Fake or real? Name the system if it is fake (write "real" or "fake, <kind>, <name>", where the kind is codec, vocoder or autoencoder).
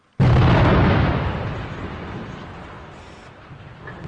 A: real